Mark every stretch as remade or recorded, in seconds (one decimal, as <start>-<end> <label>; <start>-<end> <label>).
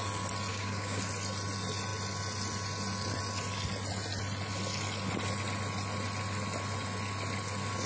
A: 0.0-0.5 recorded; 0.5-1.0 remade; 1.0-7.9 recorded